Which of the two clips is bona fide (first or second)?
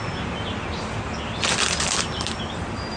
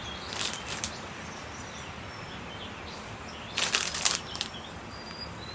first